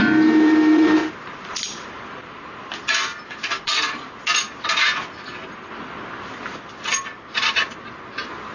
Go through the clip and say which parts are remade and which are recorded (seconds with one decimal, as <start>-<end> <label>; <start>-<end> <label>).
0.0-8.5 recorded